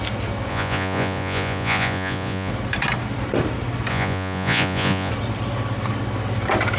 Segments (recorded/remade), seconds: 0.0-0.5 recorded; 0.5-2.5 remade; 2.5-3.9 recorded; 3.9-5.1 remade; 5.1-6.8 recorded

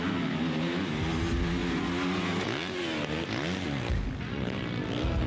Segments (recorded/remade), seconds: 0.0-5.3 recorded